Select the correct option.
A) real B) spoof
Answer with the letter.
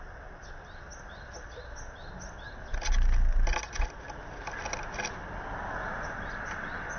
A